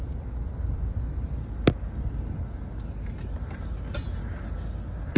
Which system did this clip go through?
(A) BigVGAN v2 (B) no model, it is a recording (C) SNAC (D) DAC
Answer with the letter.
B